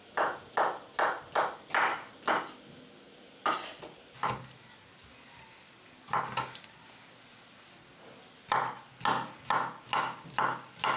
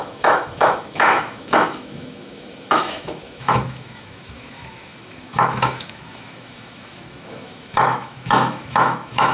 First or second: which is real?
first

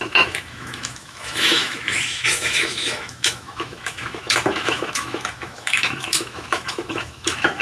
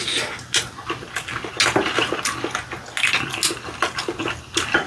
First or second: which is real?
second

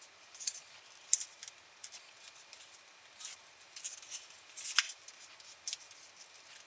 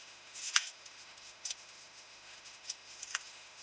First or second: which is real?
first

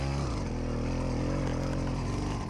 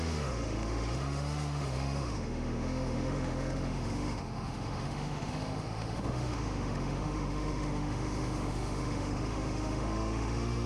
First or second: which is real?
first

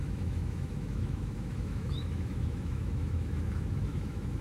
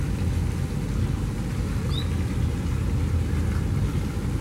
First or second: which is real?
second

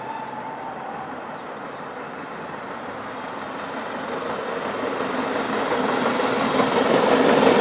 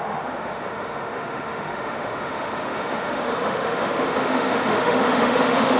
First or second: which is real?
first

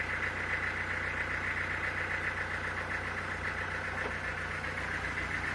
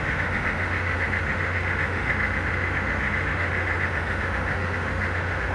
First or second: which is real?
first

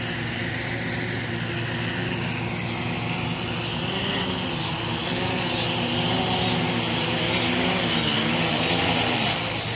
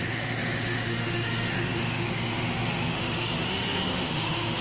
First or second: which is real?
first